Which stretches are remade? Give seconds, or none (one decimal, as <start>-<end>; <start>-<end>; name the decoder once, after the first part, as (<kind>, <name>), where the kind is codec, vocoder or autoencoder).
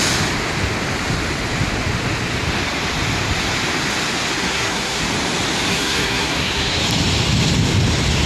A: 4.4-5.0 (codec, SNAC); 5.7-6.8